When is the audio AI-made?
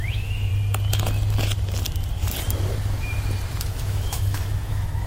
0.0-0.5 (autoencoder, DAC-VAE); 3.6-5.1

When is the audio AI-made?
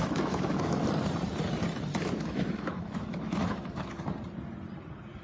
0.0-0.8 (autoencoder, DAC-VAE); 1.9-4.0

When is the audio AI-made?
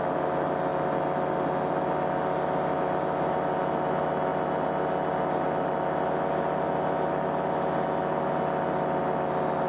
none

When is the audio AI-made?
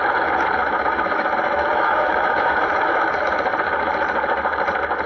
0.6-3.3 (autoencoder, DAC-VAE)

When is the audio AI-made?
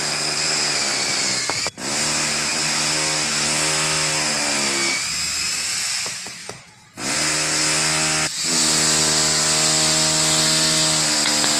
none